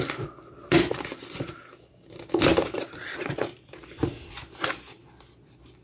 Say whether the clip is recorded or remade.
recorded